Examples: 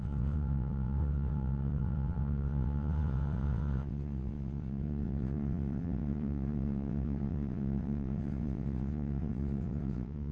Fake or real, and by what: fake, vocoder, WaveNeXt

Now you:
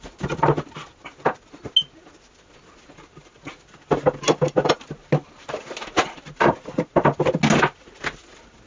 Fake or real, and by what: real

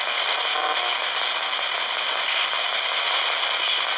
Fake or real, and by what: real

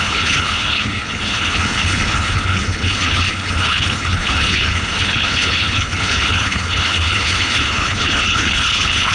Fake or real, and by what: fake, codec, HILCodec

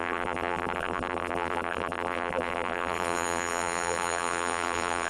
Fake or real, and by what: fake, vocoder, BigVGAN v2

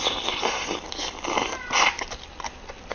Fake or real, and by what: real